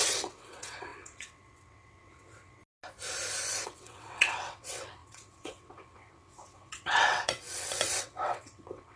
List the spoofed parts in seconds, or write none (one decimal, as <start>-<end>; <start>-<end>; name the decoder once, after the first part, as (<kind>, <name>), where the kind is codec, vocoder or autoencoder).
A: 0.0-2.6 (vocoder, WaveNeXt); 3.5-9.0